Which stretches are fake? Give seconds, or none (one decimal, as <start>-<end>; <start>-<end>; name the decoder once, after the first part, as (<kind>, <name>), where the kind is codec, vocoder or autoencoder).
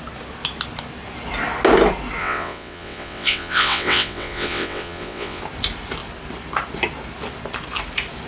2.2-5.4 (vocoder, WaveNeXt)